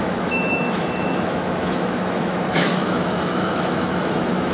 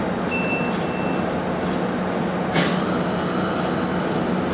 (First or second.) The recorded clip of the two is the second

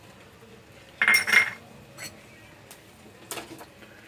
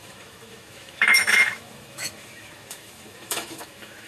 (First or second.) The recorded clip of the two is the first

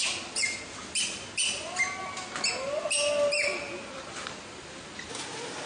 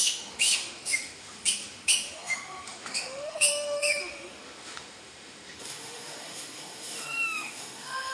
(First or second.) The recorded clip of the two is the first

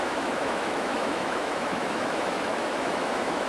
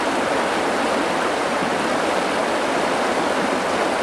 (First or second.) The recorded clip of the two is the second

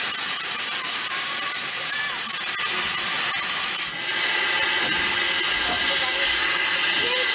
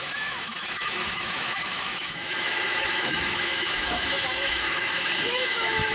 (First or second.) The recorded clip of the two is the first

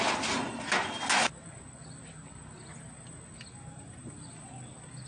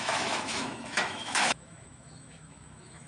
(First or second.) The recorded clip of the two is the first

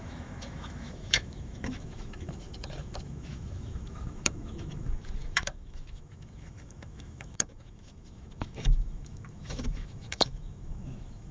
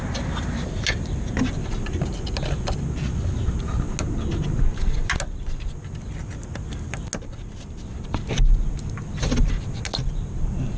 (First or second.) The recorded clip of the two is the second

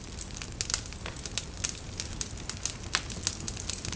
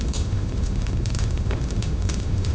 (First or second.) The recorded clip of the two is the first